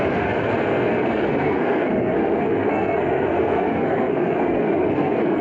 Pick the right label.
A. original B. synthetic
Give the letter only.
B